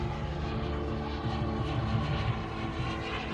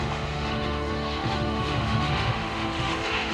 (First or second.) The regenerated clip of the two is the second